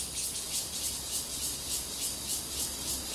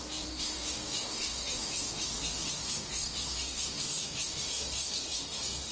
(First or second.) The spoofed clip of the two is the second